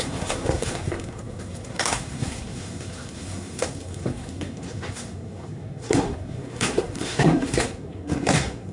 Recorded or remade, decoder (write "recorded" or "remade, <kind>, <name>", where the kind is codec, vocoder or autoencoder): remade, codec, SNAC